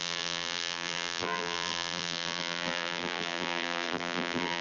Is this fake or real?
fake